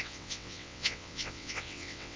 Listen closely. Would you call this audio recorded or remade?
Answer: remade